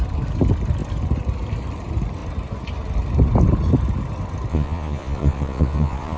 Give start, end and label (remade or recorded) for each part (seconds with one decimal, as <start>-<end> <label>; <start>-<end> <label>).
0.0-4.5 recorded; 4.5-6.2 remade